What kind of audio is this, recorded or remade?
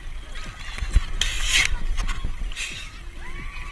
recorded